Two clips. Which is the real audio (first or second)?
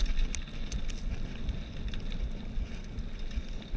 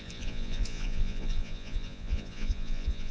first